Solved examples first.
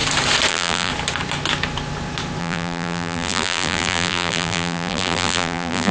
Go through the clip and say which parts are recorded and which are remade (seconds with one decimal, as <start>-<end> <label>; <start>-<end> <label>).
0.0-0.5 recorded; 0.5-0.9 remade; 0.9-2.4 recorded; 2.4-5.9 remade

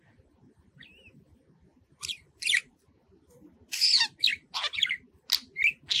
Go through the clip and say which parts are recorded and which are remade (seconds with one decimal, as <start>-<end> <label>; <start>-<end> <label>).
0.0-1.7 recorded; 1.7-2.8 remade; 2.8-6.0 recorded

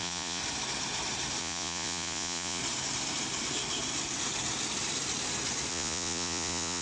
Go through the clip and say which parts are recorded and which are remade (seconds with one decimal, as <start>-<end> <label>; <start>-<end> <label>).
0.0-0.4 remade; 0.4-1.4 recorded; 1.4-2.6 remade; 2.6-5.7 recorded; 5.7-6.8 remade

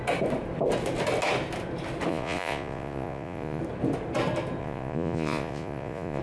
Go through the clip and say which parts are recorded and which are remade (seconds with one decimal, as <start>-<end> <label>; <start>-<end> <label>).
0.0-2.1 recorded; 2.1-3.6 remade; 3.6-4.6 recorded; 4.6-6.2 remade

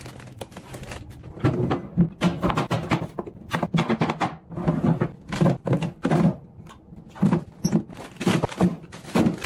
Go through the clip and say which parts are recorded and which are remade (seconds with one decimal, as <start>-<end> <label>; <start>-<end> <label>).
0.0-2.3 recorded; 2.3-3.4 remade; 3.4-9.5 recorded

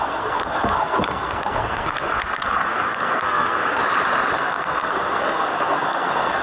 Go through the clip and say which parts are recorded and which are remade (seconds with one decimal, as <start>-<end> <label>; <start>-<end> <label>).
0.0-3.8 remade; 3.8-4.4 recorded; 4.4-6.4 remade